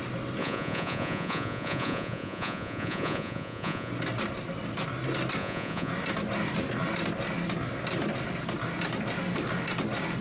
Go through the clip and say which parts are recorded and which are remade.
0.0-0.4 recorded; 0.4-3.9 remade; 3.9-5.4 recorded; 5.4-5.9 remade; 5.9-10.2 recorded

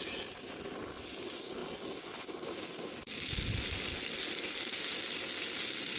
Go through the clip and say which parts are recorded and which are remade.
0.0-6.0 recorded

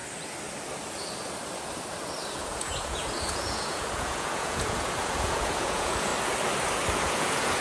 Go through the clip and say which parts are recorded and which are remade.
0.0-2.2 recorded; 2.2-6.1 remade; 6.1-7.0 recorded; 7.0-7.6 remade

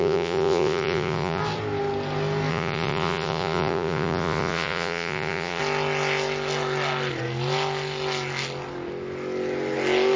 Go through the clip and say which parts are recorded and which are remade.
0.0-1.4 remade; 1.4-2.5 recorded; 2.5-5.6 remade; 5.6-10.2 recorded